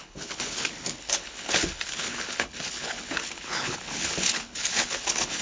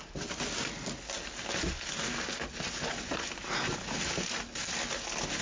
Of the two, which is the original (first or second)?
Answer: second